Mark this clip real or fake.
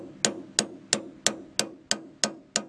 real